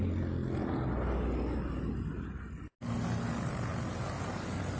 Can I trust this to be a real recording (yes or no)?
yes